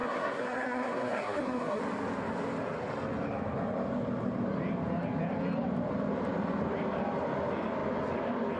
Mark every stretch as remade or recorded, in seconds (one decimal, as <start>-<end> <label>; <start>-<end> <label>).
0.0-1.8 remade; 1.8-8.6 recorded